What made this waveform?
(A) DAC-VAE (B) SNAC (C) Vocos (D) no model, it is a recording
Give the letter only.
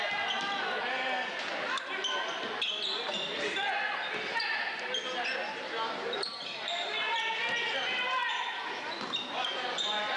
D